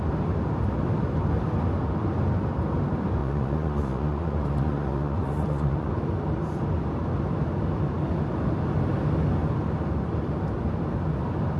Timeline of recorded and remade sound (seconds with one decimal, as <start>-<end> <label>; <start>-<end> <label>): 0.0-3.2 recorded; 3.2-5.9 remade; 5.9-11.6 recorded